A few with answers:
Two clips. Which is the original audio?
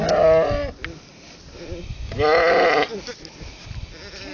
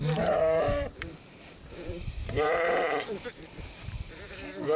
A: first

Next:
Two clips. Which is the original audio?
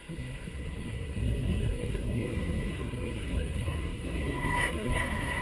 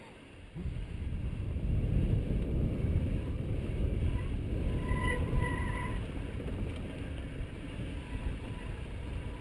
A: second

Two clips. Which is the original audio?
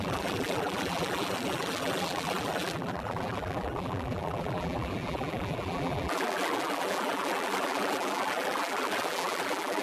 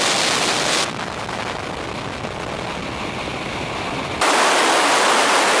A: second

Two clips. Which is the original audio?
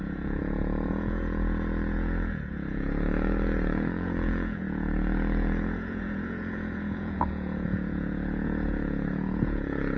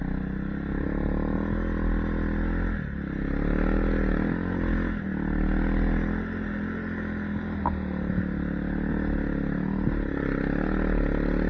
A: second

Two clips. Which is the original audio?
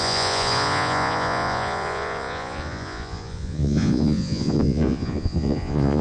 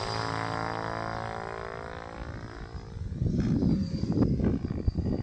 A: second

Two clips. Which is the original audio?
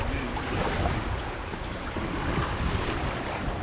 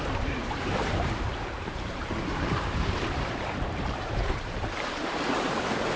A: first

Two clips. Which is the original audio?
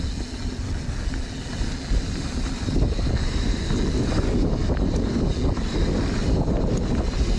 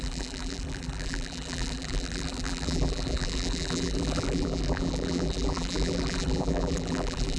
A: first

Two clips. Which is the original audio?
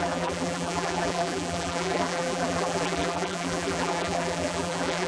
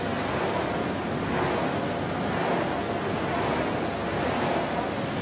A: second